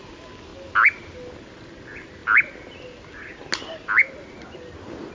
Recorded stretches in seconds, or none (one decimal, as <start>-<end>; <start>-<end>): 0.0-5.1